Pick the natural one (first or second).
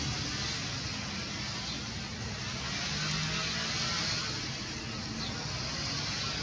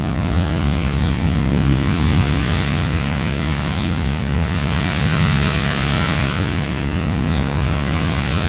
first